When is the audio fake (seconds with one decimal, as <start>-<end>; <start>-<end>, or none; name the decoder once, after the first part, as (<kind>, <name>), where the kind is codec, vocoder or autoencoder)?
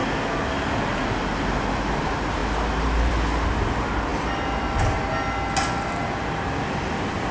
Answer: none